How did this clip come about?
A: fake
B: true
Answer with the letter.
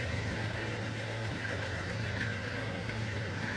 A